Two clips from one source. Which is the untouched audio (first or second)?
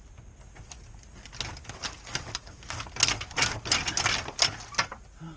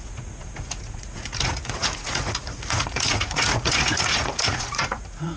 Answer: first